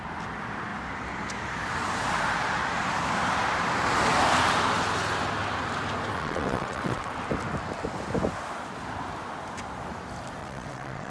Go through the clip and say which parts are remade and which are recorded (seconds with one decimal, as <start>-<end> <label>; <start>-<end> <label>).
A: 0.0-6.1 recorded; 6.1-7.1 remade; 7.1-10.4 recorded; 10.4-11.1 remade